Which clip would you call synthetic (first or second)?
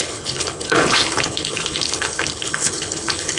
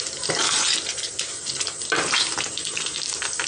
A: first